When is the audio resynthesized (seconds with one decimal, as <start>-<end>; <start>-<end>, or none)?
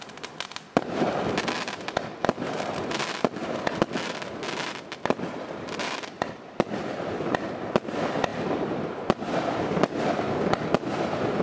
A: 8.3-10.0